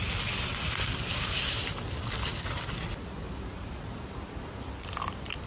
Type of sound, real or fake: real